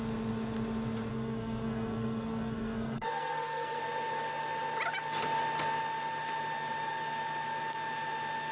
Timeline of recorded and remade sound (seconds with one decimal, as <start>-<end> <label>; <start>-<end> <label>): 0.0-1.1 recorded; 1.1-3.8 remade; 3.8-8.5 recorded